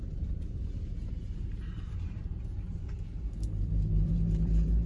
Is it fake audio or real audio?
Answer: fake